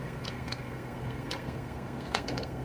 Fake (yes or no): yes